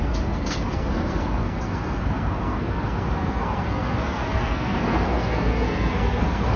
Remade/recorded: remade